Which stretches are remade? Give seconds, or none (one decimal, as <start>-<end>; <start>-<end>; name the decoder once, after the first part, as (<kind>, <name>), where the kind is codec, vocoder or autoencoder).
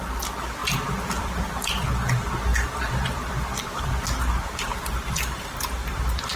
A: 0.6-1.9 (vocoder, BigVGAN v2); 2.5-4.0; 4.7-5.6